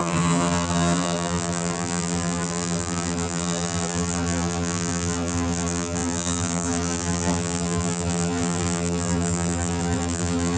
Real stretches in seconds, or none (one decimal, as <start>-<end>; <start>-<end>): none